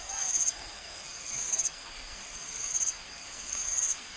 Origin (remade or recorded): remade